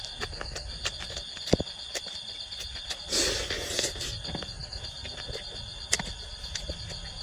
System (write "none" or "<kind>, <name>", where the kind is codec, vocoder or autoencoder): none